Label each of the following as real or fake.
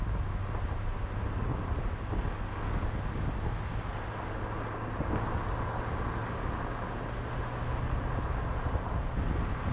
real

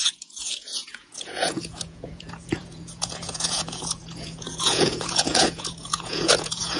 fake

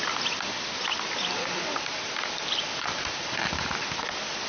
real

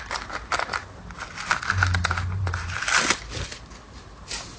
real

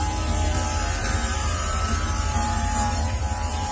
fake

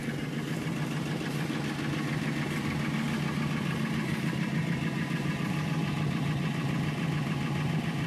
real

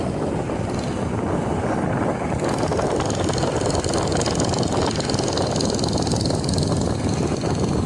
real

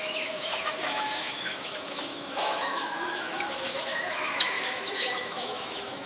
fake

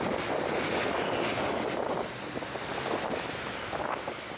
real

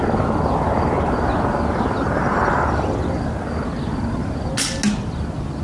real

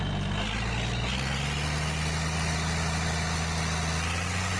real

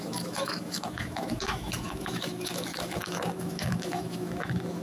fake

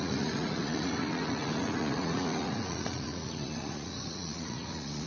fake